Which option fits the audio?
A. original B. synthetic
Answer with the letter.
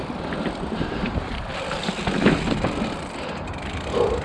B